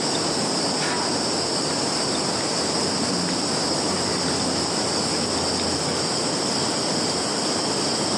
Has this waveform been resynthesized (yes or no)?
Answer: no